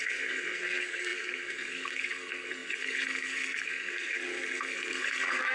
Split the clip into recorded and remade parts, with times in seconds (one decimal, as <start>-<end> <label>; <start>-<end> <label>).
0.0-5.5 remade